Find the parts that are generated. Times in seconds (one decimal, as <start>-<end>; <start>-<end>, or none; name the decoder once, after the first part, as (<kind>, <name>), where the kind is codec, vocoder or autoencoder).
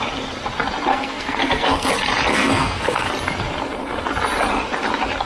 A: 0.9-1.9 (codec, SNAC); 2.3-3.1